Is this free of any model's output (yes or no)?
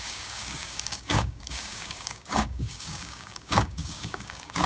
no